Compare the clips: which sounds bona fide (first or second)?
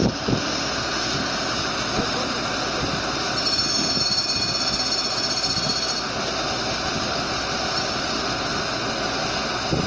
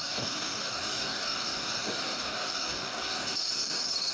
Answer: first